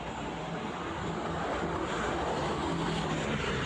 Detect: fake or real fake